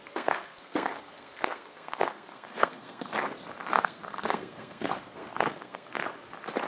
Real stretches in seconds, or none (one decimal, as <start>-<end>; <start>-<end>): 3.1-3.7; 6.0-6.7